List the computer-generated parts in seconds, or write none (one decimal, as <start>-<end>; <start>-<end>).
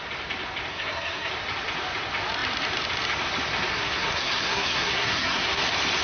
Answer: 0.7-1.3; 3.7-5.6